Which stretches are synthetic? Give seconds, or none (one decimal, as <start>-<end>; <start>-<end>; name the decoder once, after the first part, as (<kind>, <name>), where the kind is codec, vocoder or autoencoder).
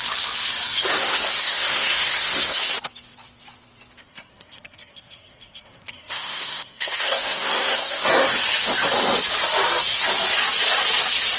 1.0-2.6 (codec, SNAC); 4.0-8.3